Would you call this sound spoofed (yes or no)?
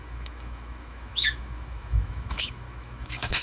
yes